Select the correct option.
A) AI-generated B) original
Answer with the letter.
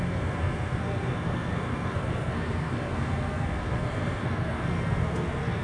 A